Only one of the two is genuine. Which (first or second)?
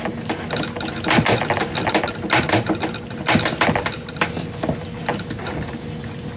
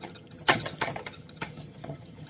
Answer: first